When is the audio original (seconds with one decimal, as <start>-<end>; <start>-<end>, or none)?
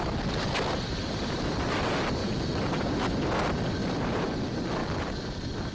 0.0-2.2; 3.0-3.8; 4.3-5.7